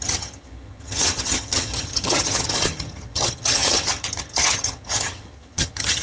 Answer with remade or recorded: remade